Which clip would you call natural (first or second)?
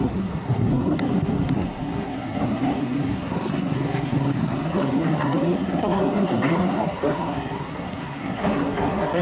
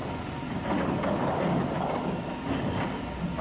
second